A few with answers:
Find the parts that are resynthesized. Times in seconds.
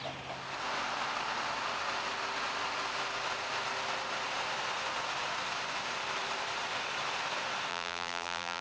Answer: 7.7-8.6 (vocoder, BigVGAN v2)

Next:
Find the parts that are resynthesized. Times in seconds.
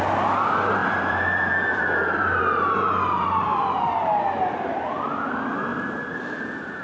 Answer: 0.8-2.4 (vocoder, BigVGAN v2)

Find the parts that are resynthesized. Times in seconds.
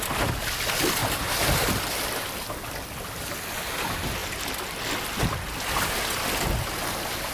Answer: 1.0-1.8 (vocoder, BigVGAN v2)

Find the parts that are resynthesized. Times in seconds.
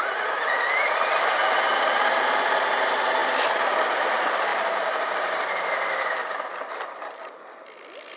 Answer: 0.0-3.2 (vocoder, BigVGAN v2); 4.0-8.2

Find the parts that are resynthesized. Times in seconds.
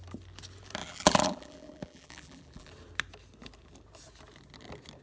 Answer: 0.8-2.7 (vocoder, BigVGAN v2)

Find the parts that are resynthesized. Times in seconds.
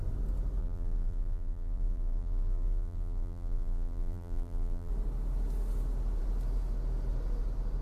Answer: 0.6-4.9 (vocoder, BigVGAN v2)